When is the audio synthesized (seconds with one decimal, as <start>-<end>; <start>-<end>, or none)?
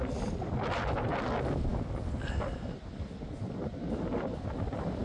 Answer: none